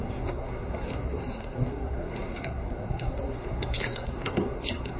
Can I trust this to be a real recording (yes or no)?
no